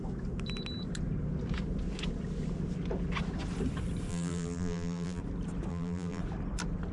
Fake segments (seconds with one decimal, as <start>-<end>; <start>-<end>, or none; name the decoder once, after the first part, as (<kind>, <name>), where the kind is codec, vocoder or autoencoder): 4.1-5.2 (vocoder, BigVGAN v2); 5.7-6.2